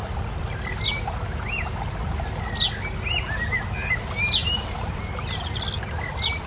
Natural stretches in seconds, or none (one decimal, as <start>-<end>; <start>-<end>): 0.0-4.4; 5.0-6.5